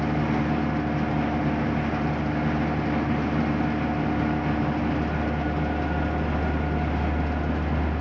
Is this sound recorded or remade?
recorded